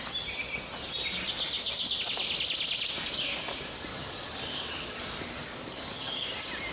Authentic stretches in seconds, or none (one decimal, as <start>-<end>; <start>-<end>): 0.0-3.9; 5.0-5.4; 6.3-6.7